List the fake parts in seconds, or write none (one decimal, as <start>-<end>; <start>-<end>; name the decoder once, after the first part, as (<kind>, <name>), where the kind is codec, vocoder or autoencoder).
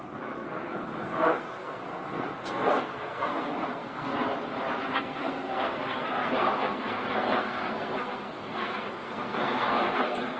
0.0-4.1 (codec, SNAC); 4.9-10.4